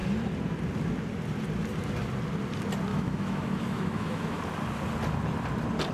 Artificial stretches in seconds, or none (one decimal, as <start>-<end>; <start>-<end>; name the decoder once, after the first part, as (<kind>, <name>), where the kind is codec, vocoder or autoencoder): 2.9-4.4 (autoencoder, DAC-VAE)